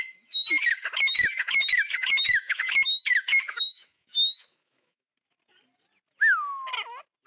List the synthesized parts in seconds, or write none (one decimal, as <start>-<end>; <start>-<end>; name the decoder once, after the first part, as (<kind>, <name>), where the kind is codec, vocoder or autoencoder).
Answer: 0.0-5.1 (autoencoder, DAC-VAE)